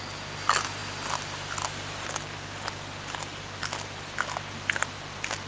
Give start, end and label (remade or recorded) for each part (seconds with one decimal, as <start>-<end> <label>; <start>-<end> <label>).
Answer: 0.0-5.5 recorded